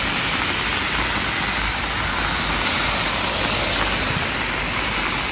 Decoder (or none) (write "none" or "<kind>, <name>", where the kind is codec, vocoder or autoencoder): none